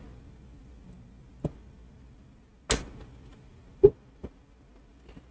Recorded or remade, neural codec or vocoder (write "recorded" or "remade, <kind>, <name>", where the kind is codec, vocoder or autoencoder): recorded